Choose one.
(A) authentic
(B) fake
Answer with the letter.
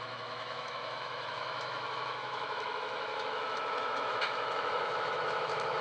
B